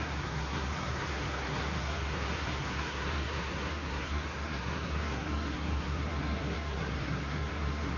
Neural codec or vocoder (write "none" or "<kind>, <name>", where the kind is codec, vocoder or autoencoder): codec, SNAC